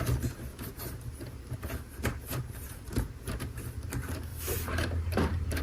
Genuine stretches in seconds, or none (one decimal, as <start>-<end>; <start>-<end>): 0.0-0.5; 2.9-4.3